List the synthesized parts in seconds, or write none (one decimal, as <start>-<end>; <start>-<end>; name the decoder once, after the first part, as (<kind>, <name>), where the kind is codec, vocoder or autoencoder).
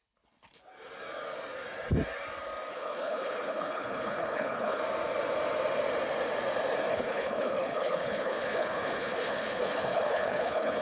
0.0-0.6 (codec, HILCodec); 2.7-4.8; 6.9-10.8